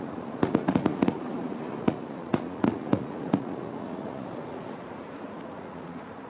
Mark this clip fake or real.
fake